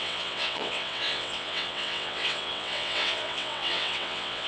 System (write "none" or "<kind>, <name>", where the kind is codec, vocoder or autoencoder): vocoder, WaveNeXt